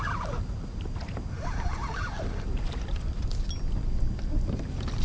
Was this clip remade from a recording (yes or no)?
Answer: no